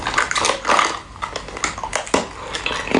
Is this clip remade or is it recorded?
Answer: recorded